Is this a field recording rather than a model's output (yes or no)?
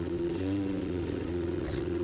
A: no